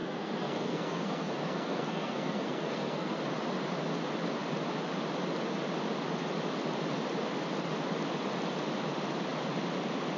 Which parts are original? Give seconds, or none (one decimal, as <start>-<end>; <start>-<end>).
3.2-10.2